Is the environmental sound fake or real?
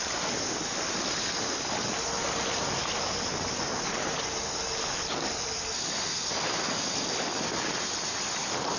real